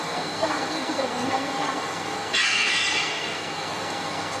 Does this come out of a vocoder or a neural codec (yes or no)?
yes